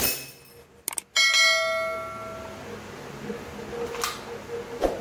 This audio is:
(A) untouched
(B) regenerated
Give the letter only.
A